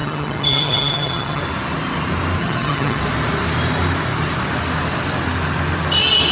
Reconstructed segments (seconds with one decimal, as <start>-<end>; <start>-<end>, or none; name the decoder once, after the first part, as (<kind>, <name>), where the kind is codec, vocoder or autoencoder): 0.0-1.4 (vocoder, HiFi-GAN); 2.4-3.0